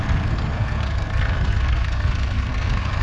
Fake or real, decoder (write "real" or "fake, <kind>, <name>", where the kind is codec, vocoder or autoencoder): fake, codec, SNAC